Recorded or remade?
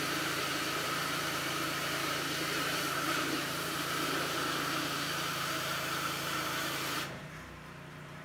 remade